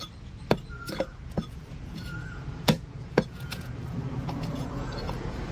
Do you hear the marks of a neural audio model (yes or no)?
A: yes